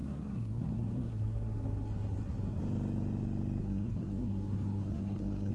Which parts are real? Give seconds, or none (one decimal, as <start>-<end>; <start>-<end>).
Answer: 2.6-3.6